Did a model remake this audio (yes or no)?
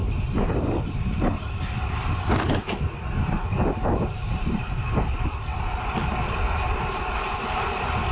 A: no